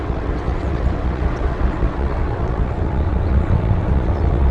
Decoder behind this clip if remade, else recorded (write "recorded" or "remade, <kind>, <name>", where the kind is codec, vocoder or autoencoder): remade, vocoder, WaveNeXt